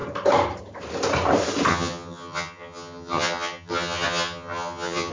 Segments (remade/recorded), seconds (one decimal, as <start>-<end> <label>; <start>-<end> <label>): 0.0-1.7 recorded; 1.7-5.1 remade